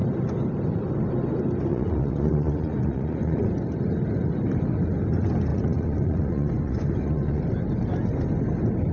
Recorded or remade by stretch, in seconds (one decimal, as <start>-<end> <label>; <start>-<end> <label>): 0.0-1.7 recorded; 1.7-3.5 remade; 3.5-5.5 recorded; 5.5-7.4 remade; 7.4-8.9 recorded